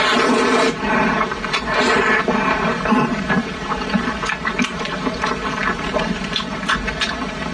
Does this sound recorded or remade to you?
remade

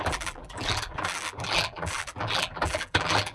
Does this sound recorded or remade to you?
remade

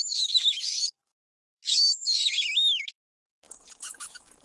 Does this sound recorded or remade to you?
remade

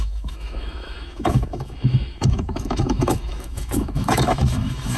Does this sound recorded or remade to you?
remade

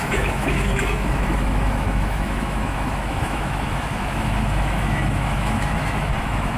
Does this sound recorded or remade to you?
remade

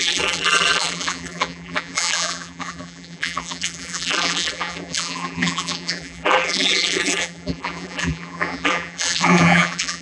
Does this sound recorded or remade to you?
remade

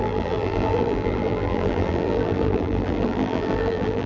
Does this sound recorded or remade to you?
remade